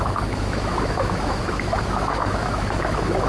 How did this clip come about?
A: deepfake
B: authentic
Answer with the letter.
A